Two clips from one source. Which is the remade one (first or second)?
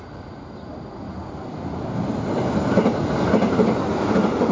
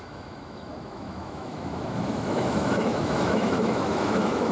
second